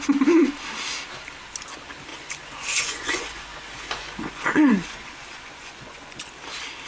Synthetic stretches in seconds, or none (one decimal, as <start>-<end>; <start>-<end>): 2.1-6.2